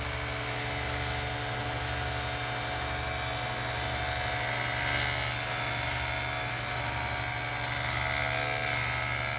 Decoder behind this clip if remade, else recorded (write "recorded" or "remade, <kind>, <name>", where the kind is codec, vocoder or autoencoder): recorded